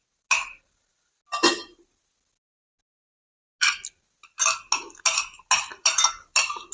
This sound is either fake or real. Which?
real